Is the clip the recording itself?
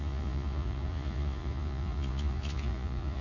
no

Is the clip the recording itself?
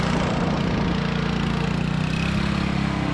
yes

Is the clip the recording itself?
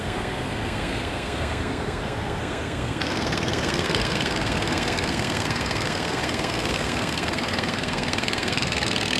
no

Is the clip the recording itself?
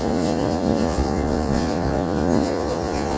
no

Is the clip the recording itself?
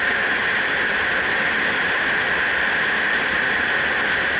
yes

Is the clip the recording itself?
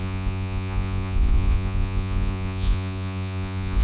no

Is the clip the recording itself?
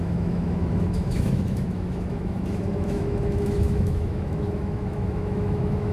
no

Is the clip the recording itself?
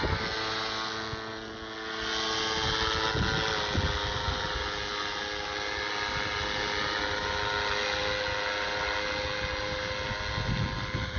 yes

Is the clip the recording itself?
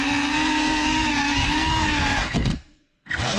no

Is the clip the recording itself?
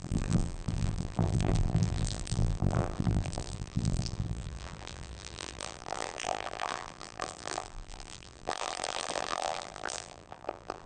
no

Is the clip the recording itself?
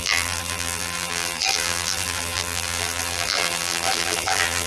no